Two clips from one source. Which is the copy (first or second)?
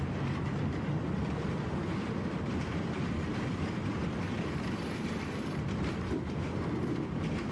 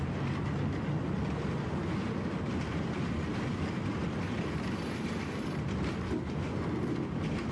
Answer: first